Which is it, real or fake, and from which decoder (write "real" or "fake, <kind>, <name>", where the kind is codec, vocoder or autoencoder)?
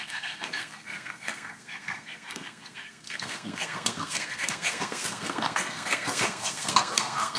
fake, codec, SNAC